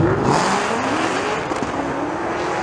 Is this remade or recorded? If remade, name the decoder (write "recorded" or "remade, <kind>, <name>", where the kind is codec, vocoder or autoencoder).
recorded